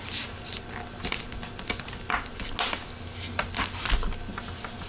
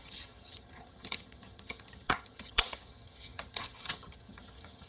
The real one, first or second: first